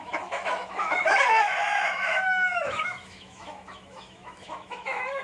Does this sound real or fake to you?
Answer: fake